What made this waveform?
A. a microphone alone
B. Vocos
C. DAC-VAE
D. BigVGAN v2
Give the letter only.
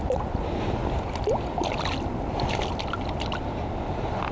A